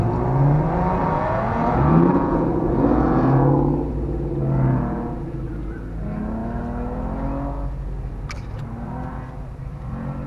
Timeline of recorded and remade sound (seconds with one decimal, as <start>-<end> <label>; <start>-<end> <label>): 0.0-10.3 recorded